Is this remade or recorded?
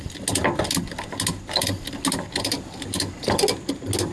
recorded